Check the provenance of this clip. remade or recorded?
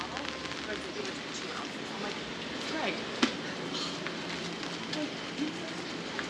recorded